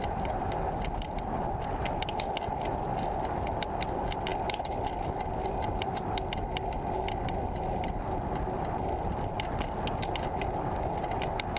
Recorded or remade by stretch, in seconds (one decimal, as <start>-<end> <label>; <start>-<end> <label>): 0.0-11.6 recorded